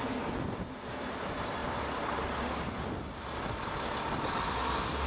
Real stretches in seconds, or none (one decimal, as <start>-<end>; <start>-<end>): 0.0-5.1